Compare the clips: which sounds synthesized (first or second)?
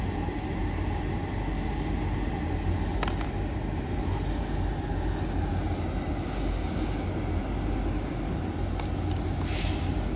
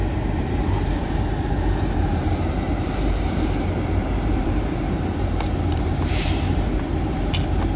second